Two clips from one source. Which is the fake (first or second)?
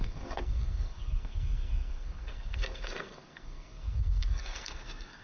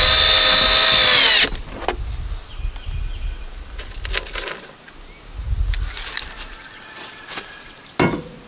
first